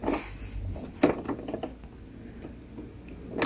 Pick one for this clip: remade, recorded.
recorded